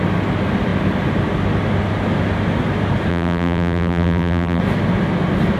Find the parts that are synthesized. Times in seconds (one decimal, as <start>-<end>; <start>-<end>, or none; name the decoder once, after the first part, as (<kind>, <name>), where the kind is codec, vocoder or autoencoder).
3.1-4.6 (vocoder, BigVGAN v2)